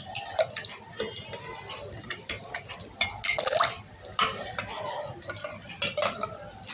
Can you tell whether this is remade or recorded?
recorded